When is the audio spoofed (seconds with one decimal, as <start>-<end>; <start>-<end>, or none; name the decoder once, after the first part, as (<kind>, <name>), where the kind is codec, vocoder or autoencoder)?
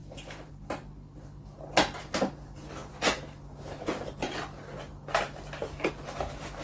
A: 0.0-0.5 (vocoder, BigVGAN v2)